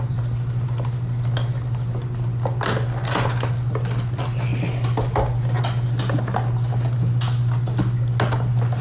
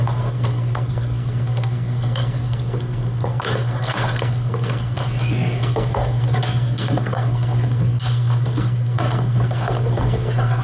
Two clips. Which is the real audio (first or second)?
first